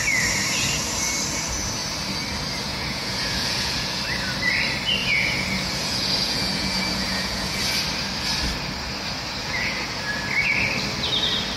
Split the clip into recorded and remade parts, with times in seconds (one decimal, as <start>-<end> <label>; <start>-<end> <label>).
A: 0.0-2.7 recorded; 2.7-4.0 remade; 4.0-5.0 recorded; 5.0-7.6 remade; 7.6-9.4 recorded; 9.4-10.0 remade; 10.0-11.6 recorded